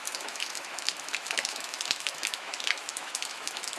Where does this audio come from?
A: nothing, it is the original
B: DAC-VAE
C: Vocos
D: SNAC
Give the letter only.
B